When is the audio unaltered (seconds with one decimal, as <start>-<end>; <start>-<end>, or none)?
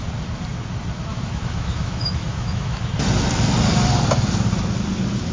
0.0-1.1; 2.9-5.3